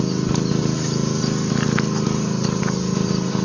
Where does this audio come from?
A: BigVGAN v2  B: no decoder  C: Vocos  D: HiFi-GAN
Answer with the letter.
B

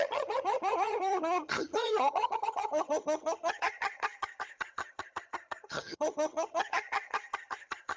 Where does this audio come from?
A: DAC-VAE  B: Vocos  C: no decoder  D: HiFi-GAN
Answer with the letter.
D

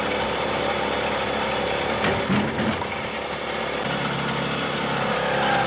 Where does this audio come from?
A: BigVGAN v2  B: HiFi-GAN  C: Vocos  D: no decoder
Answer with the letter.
D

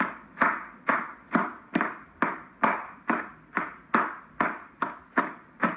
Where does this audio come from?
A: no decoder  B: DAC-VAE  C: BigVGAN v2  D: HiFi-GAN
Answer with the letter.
A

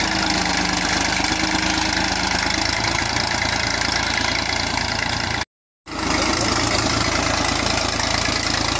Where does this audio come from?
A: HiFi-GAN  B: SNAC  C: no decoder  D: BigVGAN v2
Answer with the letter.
C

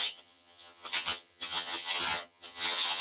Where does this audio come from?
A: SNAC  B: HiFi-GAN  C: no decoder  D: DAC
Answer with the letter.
B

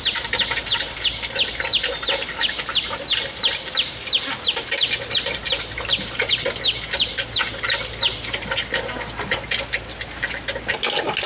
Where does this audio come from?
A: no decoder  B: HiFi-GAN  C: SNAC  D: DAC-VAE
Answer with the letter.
A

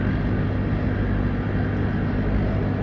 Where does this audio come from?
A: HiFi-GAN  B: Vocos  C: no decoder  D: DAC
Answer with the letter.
C